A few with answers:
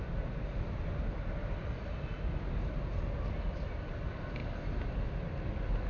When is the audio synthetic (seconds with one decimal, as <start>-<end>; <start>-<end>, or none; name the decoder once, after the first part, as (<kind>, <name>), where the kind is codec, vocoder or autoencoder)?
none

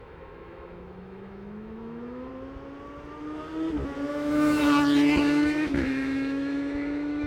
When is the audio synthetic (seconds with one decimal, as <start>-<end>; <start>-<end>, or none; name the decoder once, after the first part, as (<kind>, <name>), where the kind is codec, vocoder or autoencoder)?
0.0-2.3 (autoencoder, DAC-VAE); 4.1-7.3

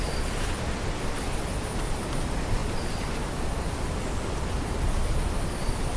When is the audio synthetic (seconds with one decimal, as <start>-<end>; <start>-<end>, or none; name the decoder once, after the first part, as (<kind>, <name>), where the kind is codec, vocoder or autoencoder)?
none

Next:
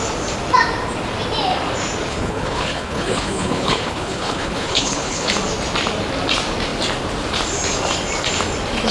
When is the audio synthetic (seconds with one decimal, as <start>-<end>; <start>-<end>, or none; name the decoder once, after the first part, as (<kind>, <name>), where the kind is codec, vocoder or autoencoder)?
2.1-5.3 (codec, HILCodec)

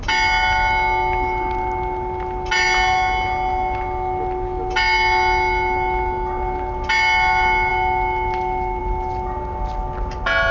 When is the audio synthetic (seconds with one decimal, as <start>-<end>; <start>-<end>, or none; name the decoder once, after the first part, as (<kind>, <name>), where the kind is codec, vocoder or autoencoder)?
none